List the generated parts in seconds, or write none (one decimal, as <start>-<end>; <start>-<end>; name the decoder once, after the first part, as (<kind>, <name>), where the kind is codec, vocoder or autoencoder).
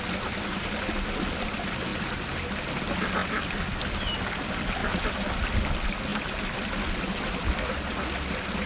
none